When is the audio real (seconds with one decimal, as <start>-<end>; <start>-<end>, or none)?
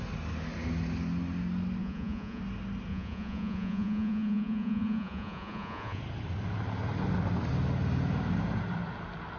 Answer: 0.0-1.8; 2.4-2.9; 6.0-9.4